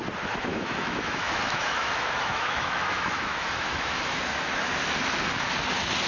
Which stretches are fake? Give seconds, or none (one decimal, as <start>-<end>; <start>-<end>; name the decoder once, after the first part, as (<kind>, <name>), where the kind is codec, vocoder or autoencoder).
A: 0.5-4.2 (autoencoder, DAC-VAE)